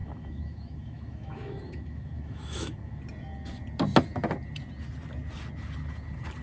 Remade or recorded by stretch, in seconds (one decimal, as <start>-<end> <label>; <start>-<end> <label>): 0.0-3.0 remade; 3.0-6.4 recorded